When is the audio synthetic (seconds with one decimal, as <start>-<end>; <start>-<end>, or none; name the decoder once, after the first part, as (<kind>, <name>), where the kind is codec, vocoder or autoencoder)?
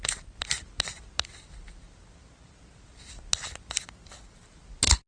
none